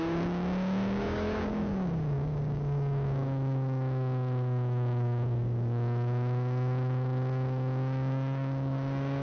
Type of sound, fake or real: fake